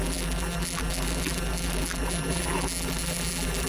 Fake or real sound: fake